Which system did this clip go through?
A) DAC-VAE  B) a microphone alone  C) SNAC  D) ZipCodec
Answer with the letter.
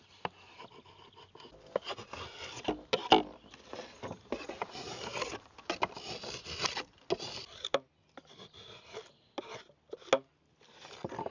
B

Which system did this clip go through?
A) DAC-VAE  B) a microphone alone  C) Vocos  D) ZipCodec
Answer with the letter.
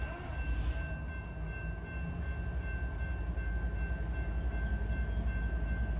B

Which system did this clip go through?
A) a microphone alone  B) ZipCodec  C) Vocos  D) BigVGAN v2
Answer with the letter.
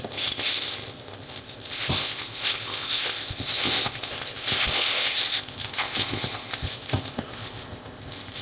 B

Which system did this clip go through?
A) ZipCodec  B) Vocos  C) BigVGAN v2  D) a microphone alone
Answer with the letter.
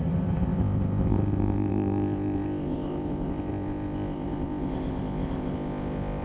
A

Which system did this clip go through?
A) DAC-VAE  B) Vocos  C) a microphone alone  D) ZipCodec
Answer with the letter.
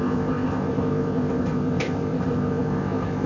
D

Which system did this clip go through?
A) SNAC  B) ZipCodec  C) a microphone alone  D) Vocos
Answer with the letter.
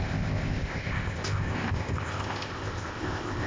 B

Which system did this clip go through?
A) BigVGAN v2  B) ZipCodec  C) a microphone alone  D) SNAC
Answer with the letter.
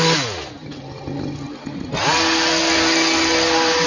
C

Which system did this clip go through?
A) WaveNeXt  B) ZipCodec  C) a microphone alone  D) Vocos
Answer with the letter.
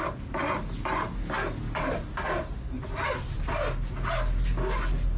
C